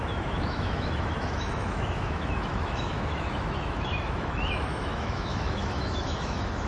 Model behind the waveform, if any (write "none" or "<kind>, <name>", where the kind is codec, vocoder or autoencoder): autoencoder, DAC-VAE